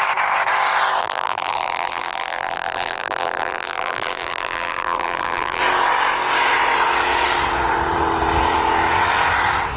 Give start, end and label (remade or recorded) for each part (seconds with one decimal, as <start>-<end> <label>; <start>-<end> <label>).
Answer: 0.0-1.0 recorded; 1.0-5.6 remade; 5.6-9.8 recorded